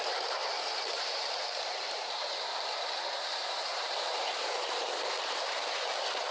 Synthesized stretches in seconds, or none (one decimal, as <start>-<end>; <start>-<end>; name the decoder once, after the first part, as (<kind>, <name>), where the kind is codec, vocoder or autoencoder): 0.4-4.0 (vocoder, BigVGAN v2)

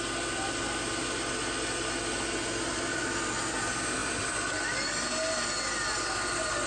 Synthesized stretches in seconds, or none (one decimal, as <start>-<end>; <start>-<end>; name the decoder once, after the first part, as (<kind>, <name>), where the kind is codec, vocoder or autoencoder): none

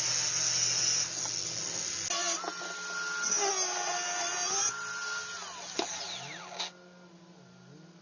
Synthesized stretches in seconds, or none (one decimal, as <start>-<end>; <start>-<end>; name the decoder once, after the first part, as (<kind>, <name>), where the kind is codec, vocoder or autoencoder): none